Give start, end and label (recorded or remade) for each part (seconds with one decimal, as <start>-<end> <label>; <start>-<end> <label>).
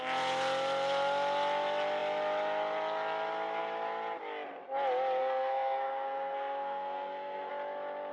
0.0-5.2 recorded; 5.2-7.5 remade; 7.5-8.1 recorded